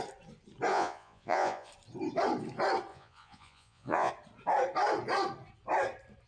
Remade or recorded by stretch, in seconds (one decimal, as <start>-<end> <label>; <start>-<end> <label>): 0.0-0.7 recorded; 0.7-1.7 remade; 1.7-2.9 recorded; 2.9-4.1 remade; 4.1-6.3 recorded